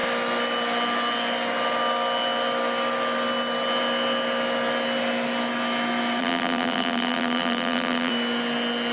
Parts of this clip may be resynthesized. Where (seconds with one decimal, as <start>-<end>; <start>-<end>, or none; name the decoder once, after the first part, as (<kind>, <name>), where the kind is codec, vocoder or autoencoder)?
6.2-8.1 (vocoder, BigVGAN v2)